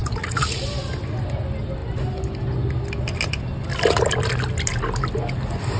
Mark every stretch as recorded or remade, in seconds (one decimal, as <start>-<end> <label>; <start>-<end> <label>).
0.0-0.6 remade; 0.6-5.8 recorded